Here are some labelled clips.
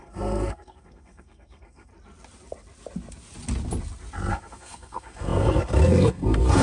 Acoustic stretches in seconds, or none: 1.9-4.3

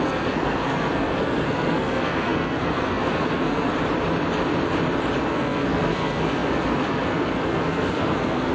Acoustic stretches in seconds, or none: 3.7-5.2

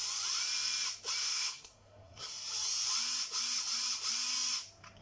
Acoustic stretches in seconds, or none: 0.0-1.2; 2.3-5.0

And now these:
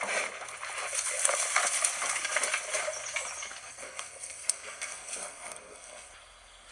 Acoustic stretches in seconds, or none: 0.0-3.6; 6.1-6.7

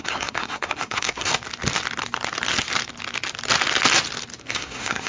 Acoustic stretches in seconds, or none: 1.3-4.4

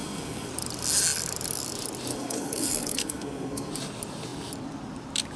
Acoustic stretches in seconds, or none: 0.5-2.1; 3.7-5.4

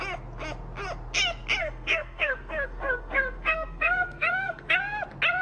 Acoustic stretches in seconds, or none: 0.0-1.6; 4.8-5.4

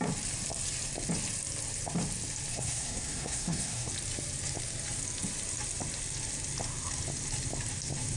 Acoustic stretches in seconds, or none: 0.0-2.5; 3.9-8.2